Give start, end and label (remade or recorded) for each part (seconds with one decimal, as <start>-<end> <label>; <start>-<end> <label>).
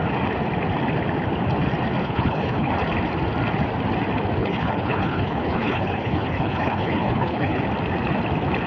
0.0-2.0 recorded; 2.0-2.7 remade; 2.7-4.4 recorded; 4.4-7.6 remade; 7.6-8.7 recorded